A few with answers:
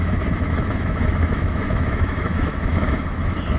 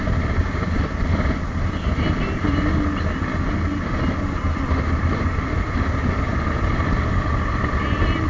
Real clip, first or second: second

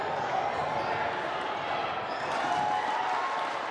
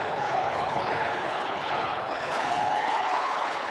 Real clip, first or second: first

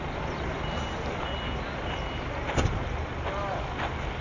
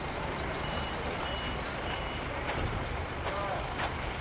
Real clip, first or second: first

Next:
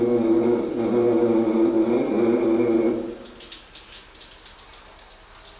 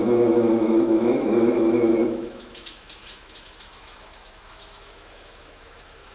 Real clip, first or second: first